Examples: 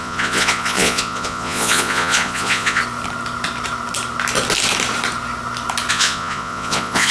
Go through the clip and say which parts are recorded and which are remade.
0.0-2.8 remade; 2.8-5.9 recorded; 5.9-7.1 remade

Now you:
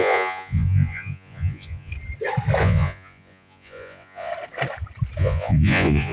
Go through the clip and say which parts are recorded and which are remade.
0.0-1.9 remade; 1.9-2.6 recorded; 2.6-4.3 remade; 4.3-5.2 recorded; 5.2-6.1 remade

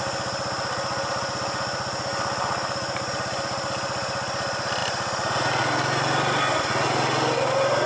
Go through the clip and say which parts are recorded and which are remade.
0.0-7.9 recorded

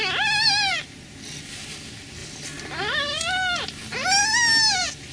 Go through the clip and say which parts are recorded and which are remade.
0.0-5.1 recorded

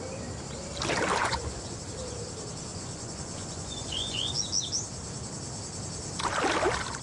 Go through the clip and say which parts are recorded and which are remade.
0.0-1.2 recorded; 1.2-1.8 remade; 1.8-2.7 recorded; 2.7-4.3 remade; 4.3-7.0 recorded

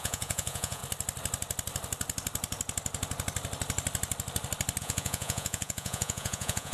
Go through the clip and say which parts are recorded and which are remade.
0.0-0.8 remade; 0.8-4.8 recorded; 4.8-6.7 remade

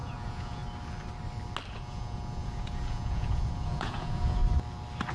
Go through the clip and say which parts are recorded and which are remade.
0.0-0.6 remade; 0.6-1.7 recorded; 1.7-4.4 remade; 4.4-5.1 recorded